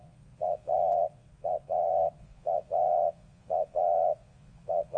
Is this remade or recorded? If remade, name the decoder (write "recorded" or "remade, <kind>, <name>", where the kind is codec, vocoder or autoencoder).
remade, vocoder, Vocos